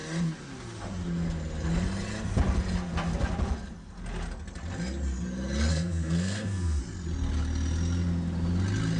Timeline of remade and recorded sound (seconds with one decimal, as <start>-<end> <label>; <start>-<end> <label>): 0.0-5.7 recorded; 5.7-6.8 remade; 6.8-9.0 recorded